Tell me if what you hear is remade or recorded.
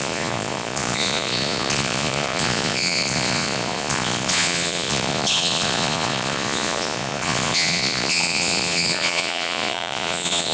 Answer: remade